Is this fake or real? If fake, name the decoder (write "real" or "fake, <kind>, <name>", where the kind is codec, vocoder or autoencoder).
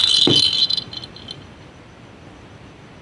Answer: real